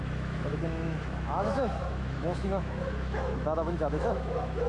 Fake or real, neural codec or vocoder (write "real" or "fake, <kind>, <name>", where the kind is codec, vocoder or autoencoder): fake, autoencoder, DAC-VAE